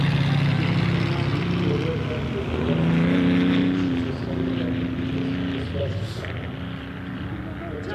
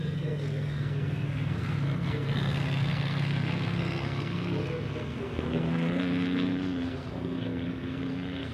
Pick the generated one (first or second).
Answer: second